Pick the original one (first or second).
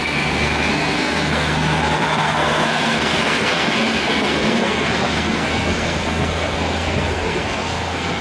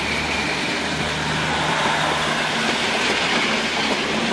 second